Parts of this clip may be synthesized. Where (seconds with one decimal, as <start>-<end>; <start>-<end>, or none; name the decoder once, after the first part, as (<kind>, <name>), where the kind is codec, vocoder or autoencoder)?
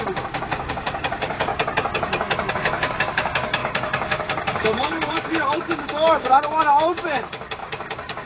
0.0-1.5 (codec, DAC); 2.5-8.3